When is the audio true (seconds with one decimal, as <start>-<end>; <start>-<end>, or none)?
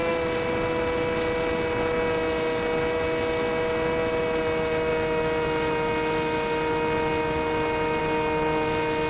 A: 0.0-9.1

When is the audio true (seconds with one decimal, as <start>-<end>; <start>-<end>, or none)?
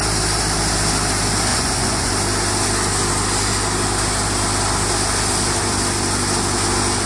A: 0.0-1.5; 2.1-7.1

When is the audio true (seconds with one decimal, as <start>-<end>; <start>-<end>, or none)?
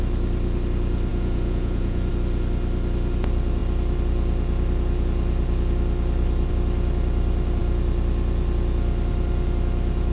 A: 0.0-1.1; 2.1-10.1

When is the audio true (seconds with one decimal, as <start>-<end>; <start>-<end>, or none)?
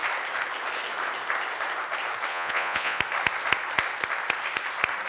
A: 0.0-2.3; 3.0-5.1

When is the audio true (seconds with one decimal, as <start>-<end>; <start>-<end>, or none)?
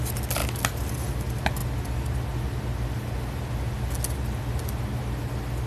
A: 0.0-5.7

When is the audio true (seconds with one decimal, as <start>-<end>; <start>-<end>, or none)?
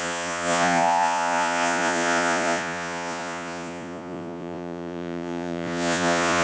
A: none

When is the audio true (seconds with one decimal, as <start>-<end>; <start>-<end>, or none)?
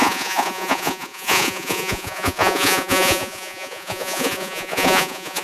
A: none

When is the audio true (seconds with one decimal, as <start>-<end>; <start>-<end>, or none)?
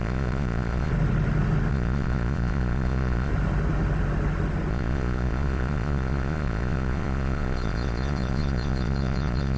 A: 0.9-1.7; 3.3-4.7